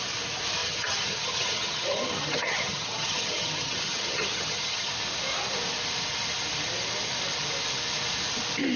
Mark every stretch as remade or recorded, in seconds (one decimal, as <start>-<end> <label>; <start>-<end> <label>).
0.0-0.6 recorded; 0.6-4.9 remade; 4.9-8.8 recorded